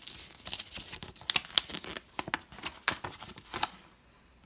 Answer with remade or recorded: recorded